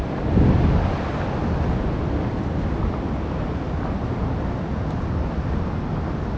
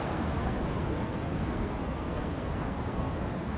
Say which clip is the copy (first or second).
second